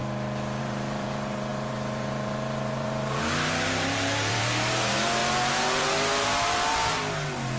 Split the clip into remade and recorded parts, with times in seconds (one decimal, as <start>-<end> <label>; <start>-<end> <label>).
0.0-0.6 recorded; 0.6-7.6 remade